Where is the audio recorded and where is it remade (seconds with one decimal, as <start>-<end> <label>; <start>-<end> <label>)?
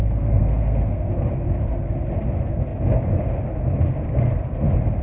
0.0-1.1 remade; 1.1-5.0 recorded